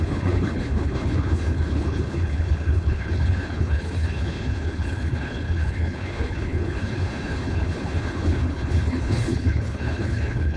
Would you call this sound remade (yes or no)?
yes